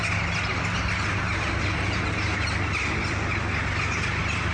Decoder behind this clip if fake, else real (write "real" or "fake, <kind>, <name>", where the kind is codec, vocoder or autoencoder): real